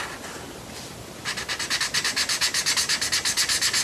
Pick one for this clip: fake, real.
real